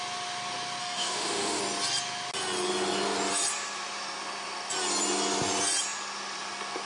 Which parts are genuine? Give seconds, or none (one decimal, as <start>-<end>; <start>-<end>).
0.0-0.8; 1.6-6.9